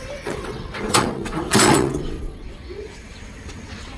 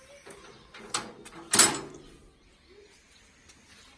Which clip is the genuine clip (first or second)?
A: second